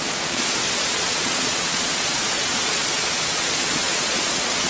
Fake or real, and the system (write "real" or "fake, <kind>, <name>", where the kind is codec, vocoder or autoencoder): fake, vocoder, Vocos